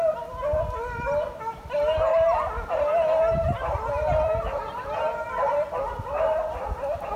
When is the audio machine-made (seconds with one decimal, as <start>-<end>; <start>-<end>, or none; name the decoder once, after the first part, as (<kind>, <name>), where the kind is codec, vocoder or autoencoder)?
none